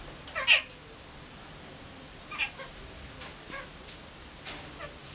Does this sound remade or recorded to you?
recorded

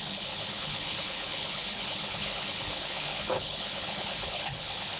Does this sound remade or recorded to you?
remade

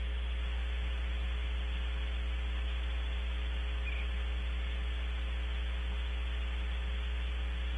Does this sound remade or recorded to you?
recorded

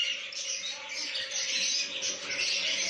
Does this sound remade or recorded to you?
recorded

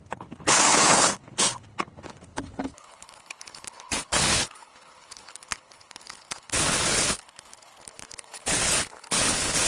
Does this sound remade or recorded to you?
remade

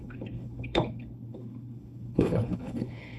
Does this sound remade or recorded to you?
remade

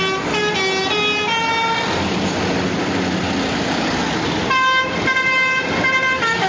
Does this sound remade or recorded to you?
recorded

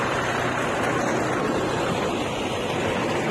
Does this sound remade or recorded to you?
recorded